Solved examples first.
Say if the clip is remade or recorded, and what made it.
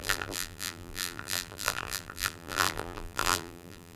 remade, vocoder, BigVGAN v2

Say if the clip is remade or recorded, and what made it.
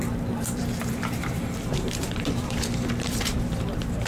remade, vocoder, BigVGAN v2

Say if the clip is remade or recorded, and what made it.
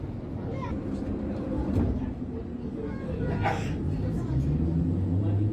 recorded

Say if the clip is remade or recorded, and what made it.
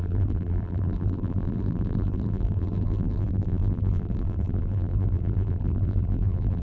remade, vocoder, BigVGAN v2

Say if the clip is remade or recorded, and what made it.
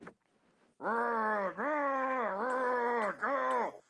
recorded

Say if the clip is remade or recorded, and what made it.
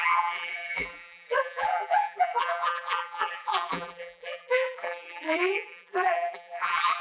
remade, vocoder, BigVGAN v2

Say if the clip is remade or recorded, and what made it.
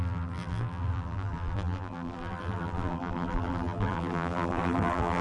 remade, vocoder, BigVGAN v2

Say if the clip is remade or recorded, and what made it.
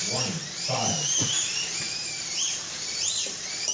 remade, vocoder, BigVGAN v2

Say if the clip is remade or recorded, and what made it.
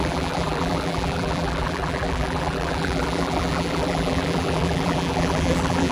remade, vocoder, BigVGAN v2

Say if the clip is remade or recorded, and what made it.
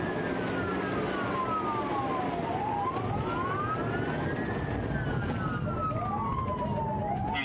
recorded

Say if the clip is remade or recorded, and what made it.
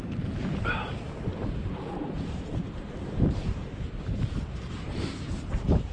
remade, vocoder, BigVGAN v2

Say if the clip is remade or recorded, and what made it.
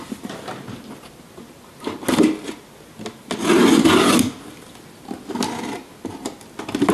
recorded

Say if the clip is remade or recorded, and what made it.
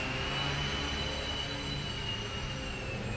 recorded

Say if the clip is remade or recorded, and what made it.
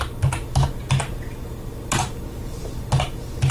recorded